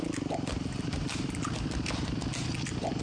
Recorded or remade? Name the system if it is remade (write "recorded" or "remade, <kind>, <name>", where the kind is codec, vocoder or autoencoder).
recorded